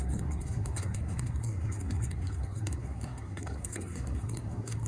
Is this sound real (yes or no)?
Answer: no